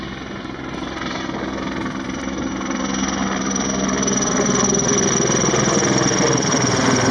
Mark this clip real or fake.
real